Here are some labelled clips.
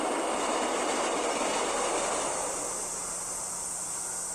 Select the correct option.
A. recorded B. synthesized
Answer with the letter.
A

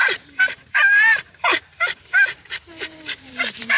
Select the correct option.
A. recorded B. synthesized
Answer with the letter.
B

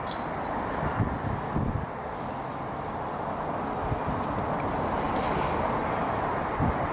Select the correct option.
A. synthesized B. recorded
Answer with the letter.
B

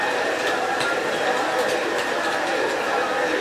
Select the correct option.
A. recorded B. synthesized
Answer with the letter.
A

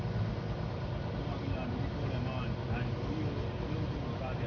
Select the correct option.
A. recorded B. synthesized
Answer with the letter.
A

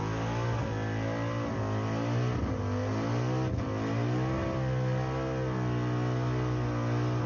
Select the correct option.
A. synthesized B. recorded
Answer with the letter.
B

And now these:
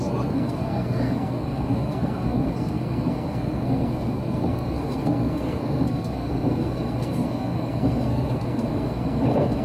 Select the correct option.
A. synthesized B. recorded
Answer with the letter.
A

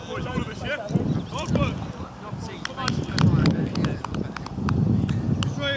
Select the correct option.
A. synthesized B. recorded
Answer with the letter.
B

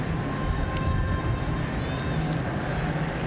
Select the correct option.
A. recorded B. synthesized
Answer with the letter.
A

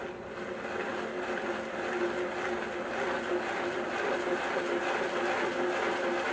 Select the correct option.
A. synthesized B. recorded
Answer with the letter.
B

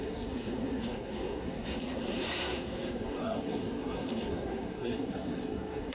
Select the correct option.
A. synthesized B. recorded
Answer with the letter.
A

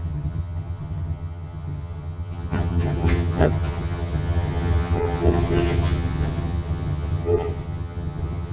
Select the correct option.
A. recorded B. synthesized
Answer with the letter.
B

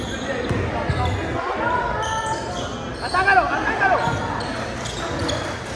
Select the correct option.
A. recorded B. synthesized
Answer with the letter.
A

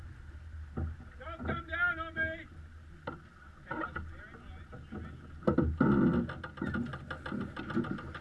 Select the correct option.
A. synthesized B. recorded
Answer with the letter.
B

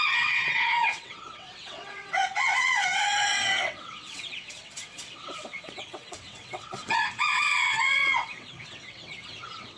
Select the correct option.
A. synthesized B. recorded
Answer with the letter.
A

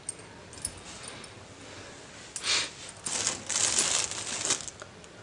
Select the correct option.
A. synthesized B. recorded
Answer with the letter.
B